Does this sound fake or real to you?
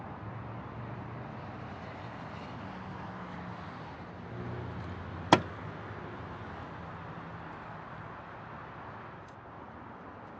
real